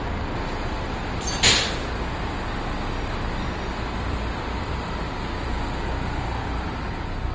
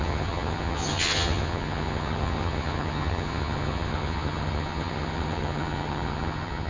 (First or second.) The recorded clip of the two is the first